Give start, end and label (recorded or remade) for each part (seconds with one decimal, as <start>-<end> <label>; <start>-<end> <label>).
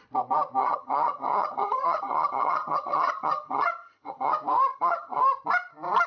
0.0-0.6 recorded; 0.6-4.3 remade; 4.3-4.7 recorded; 4.7-5.2 remade; 5.2-6.1 recorded